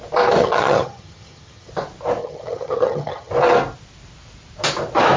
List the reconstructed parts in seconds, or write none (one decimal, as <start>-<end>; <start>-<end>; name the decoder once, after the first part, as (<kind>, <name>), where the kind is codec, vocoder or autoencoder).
0.4-1.7 (vocoder, HiFi-GAN); 2.2-3.3